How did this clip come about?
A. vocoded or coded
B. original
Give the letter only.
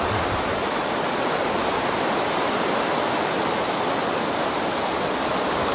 B